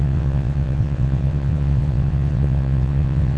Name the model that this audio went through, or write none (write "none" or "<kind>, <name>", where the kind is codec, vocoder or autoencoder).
vocoder, WaveNeXt